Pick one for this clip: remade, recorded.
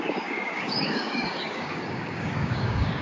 remade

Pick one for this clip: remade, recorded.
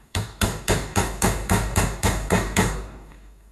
remade